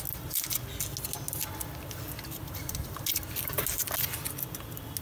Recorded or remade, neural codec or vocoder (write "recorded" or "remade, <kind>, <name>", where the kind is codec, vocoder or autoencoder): recorded